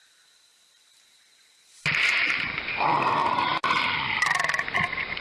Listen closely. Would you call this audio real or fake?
real